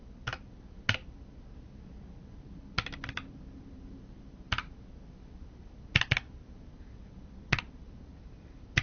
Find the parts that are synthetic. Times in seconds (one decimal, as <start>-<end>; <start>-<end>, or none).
none